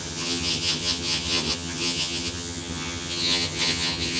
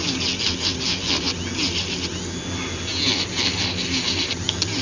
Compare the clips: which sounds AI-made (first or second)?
first